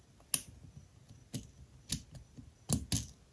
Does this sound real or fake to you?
real